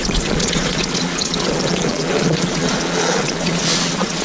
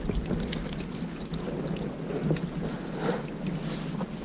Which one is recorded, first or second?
second